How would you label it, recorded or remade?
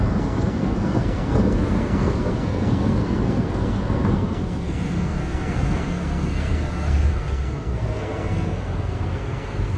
remade